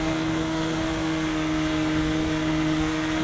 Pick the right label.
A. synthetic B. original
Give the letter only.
A